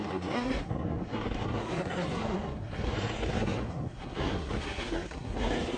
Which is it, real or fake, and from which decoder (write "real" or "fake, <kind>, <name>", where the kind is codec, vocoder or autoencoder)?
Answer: fake, codec, SNAC